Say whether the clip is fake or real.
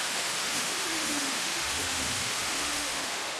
fake